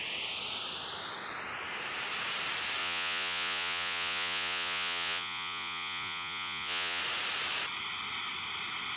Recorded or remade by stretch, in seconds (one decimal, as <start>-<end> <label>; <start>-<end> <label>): 0.0-2.8 recorded; 2.8-7.0 remade; 7.0-9.0 recorded